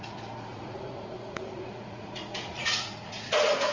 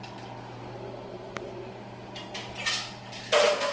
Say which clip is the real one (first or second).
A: second